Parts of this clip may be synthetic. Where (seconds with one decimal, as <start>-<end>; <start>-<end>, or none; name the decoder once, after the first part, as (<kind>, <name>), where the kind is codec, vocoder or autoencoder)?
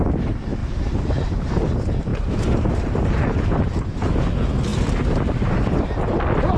0.6-1.5 (vocoder, BigVGAN v2); 2.1-3.1